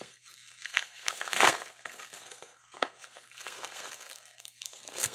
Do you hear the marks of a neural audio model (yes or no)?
yes